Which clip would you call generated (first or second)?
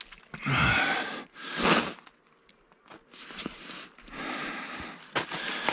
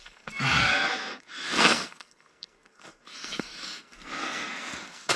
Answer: second